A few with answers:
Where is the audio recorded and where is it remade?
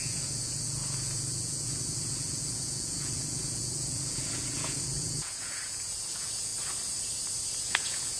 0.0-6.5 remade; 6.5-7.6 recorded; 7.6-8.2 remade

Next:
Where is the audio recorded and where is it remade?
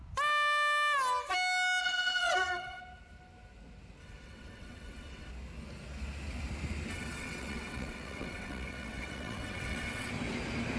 0.0-1.8 recorded; 1.8-2.8 remade; 2.8-4.0 recorded; 4.0-5.3 remade; 5.3-6.9 recorded; 6.9-10.1 remade; 10.1-10.8 recorded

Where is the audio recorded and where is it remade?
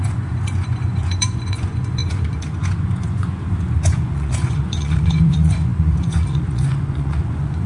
0.0-7.7 remade